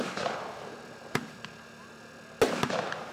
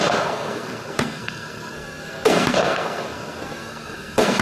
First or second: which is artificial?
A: second